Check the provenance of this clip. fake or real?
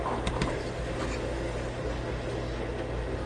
real